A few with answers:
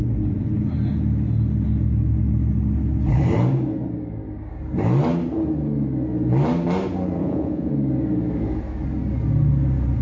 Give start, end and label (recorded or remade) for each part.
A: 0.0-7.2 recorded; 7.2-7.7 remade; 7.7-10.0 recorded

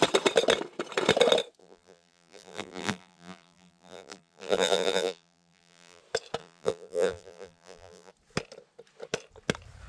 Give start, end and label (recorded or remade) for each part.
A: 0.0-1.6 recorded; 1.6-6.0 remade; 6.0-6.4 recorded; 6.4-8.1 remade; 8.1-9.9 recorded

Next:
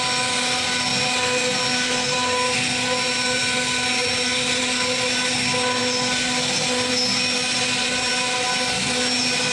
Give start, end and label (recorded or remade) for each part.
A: 0.0-9.5 recorded

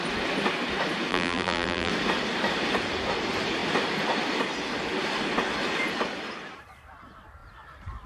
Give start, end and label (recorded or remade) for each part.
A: 0.0-1.1 recorded; 1.1-1.9 remade; 1.9-8.1 recorded

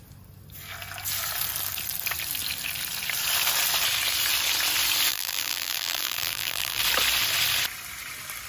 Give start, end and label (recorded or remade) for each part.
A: 0.0-5.1 recorded; 5.1-6.8 remade; 6.8-8.5 recorded

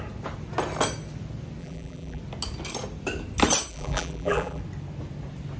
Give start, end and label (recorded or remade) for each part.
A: 0.0-1.6 recorded; 1.6-2.2 remade; 2.2-3.7 recorded; 3.7-4.6 remade; 4.6-5.6 recorded